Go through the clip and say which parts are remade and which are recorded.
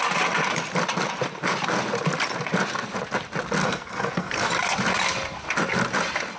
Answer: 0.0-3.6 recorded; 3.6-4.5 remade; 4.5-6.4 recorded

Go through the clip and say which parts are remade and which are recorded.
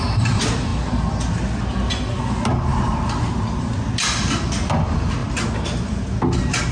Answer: 0.0-6.7 recorded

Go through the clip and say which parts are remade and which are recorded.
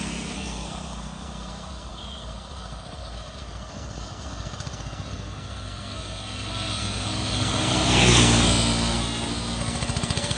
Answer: 0.0-10.4 remade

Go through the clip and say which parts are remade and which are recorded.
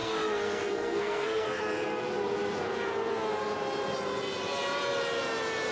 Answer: 0.0-1.6 remade; 1.6-5.7 recorded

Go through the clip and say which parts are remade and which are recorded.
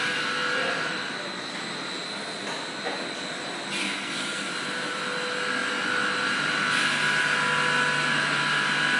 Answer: 0.0-3.8 recorded; 3.8-4.5 remade; 4.5-9.0 recorded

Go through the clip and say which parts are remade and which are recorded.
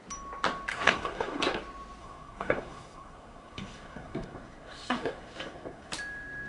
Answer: 0.0-0.7 recorded; 0.7-1.6 remade; 1.6-2.0 recorded; 2.0-5.9 remade; 5.9-6.5 recorded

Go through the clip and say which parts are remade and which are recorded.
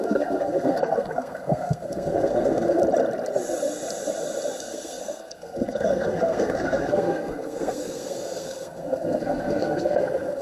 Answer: 0.0-2.8 remade; 2.8-4.6 recorded; 4.6-10.4 remade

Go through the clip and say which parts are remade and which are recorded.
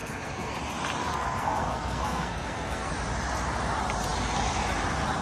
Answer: 0.0-0.5 remade; 0.5-1.0 recorded; 1.0-2.9 remade; 2.9-5.2 recorded